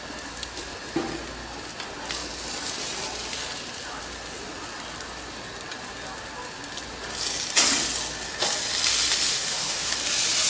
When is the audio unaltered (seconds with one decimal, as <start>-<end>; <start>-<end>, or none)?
0.0-9.3; 9.9-10.5